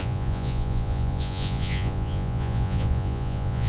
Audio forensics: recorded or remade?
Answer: remade